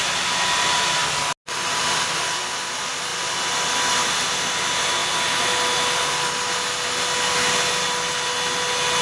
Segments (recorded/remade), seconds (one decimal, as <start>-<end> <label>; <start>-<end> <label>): 0.0-9.0 recorded